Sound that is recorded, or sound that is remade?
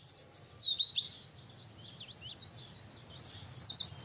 recorded